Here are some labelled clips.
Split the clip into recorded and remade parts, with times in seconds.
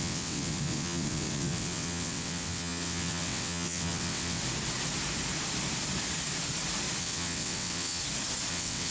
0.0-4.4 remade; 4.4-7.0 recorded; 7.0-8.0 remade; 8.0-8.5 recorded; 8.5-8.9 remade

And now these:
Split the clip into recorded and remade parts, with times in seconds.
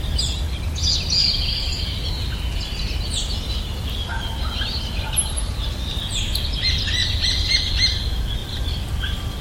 0.0-1.2 recorded; 1.2-1.8 remade; 1.8-7.0 recorded; 7.0-7.5 remade; 7.5-8.4 recorded; 8.4-9.4 remade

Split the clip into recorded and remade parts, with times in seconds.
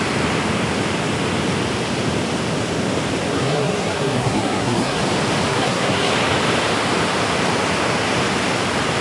0.0-3.3 recorded; 3.3-5.0 remade; 5.0-5.5 recorded; 5.5-6.1 remade; 6.1-9.0 recorded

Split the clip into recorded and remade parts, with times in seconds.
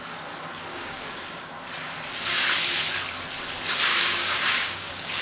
0.0-0.7 recorded; 0.7-1.5 remade; 1.5-3.9 recorded; 3.9-5.2 remade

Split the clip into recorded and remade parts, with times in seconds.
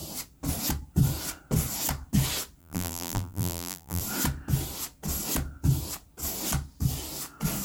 0.0-2.6 recorded; 2.6-4.0 remade; 4.0-7.6 recorded